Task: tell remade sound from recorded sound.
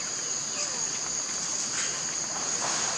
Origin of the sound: recorded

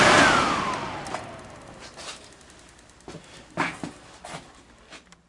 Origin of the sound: recorded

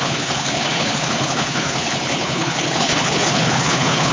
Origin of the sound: remade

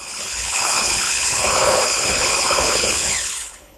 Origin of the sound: remade